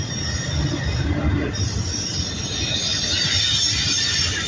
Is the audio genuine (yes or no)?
yes